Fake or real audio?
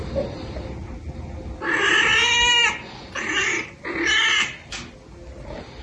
real